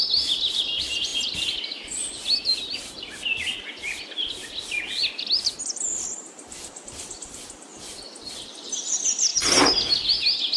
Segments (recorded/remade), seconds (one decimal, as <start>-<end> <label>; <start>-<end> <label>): 0.0-9.3 remade; 9.3-10.6 recorded